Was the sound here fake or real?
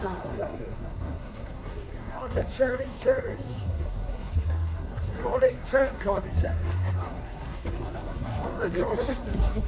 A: fake